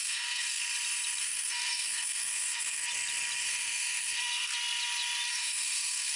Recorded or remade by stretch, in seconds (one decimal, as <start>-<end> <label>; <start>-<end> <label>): 0.0-0.6 remade; 0.6-1.2 recorded; 1.2-2.8 remade; 2.8-3.4 recorded; 3.4-4.5 remade; 4.5-5.3 recorded; 5.3-6.2 remade